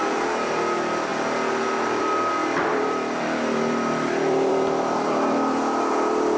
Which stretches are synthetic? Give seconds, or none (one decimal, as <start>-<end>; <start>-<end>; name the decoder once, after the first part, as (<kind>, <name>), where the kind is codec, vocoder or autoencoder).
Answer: 2.4-6.4 (vocoder, BigVGAN v2)